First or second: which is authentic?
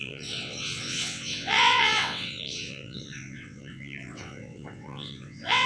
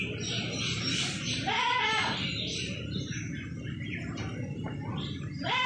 second